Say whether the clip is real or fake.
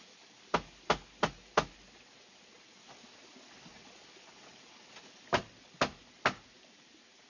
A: real